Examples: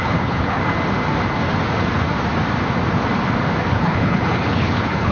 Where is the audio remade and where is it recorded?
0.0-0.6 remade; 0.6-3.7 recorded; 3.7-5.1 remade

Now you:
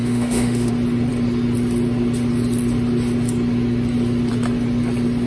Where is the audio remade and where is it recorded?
0.0-0.7 remade; 0.7-5.3 recorded

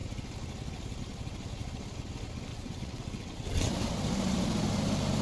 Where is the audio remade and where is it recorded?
0.0-2.5 recorded; 2.5-3.7 remade; 3.7-5.2 recorded

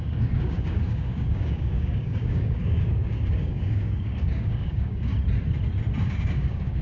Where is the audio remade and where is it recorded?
0.0-5.1 remade; 5.1-6.0 recorded; 6.0-6.8 remade

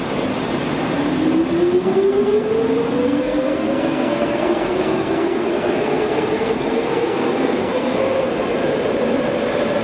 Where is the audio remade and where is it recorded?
0.0-1.6 recorded; 1.6-2.5 remade; 2.5-3.0 recorded; 3.0-8.3 remade; 8.3-9.8 recorded